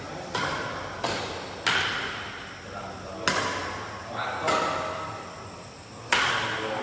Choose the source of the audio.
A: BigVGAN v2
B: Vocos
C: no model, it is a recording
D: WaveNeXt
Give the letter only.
C